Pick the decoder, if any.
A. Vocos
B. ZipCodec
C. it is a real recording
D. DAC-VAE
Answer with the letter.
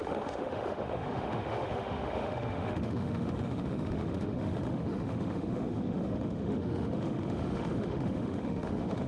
D